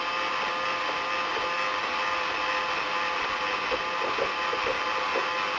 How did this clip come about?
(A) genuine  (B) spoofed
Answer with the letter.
A